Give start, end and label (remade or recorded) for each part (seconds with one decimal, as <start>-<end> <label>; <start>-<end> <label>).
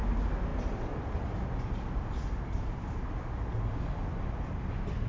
0.0-0.5 recorded; 0.5-2.8 remade; 2.8-5.1 recorded